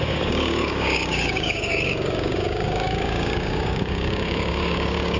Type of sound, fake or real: fake